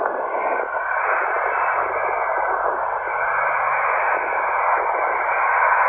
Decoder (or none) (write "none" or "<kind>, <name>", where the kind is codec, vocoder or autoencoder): none